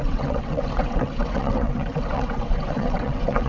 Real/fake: fake